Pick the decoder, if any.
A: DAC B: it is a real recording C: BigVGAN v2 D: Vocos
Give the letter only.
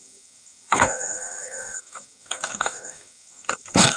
A